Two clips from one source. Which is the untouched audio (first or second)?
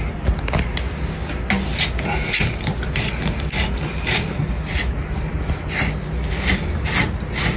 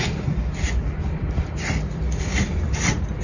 first